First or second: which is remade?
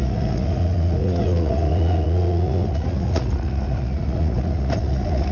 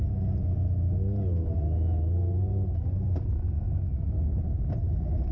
first